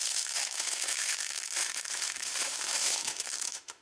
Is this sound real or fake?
fake